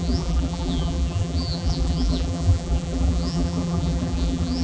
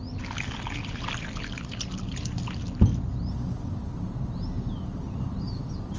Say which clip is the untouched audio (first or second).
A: second